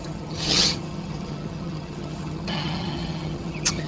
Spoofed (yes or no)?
yes